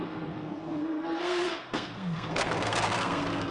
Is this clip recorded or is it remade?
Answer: remade